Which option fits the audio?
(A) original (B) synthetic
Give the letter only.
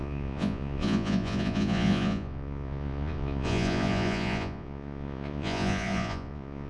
B